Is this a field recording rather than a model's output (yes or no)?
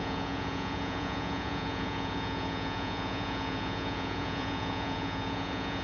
no